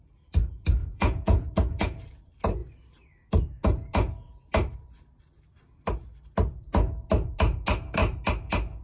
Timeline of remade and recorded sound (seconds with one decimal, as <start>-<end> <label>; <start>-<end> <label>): 0.0-0.8 recorded; 0.8-2.0 remade; 2.0-8.8 recorded